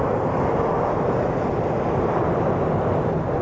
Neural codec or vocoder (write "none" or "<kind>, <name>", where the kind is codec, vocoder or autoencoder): none